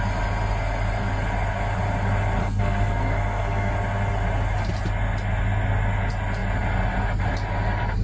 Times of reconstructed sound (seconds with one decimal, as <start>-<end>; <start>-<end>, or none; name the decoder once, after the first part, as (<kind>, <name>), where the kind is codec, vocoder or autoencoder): 2.4-3.7 (codec, SNAC)